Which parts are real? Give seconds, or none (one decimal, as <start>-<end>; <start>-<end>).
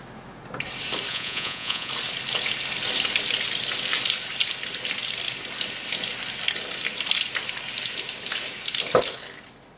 0.0-1.1; 1.9-9.8